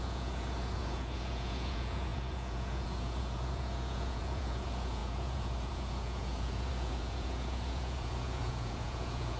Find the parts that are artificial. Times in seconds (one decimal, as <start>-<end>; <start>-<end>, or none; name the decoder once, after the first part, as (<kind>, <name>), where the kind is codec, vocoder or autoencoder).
0.0-9.4 (vocoder, Vocos)